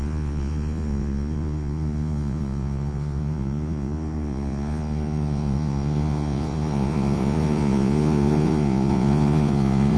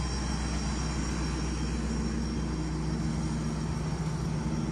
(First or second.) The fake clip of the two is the first